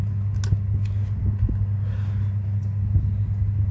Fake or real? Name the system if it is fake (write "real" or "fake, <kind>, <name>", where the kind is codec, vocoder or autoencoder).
real